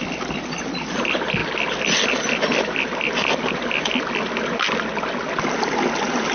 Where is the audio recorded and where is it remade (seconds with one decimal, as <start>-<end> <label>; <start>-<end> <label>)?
0.0-6.3 recorded